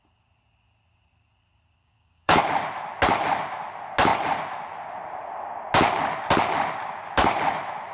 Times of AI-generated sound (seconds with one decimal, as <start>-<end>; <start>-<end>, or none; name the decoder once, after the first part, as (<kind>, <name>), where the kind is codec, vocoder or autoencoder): 1.8-2.4 (codec, DAC)